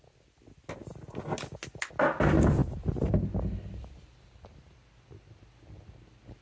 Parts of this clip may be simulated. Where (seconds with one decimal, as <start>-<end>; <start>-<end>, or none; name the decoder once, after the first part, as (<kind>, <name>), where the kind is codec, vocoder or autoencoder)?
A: none